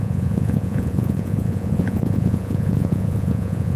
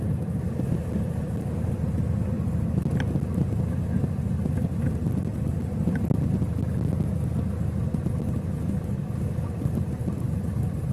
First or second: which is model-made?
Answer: first